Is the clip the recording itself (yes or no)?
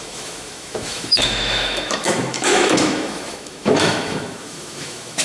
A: no